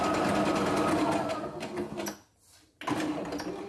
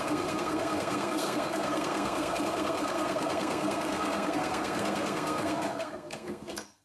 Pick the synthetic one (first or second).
second